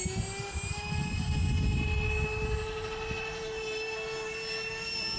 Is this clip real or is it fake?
real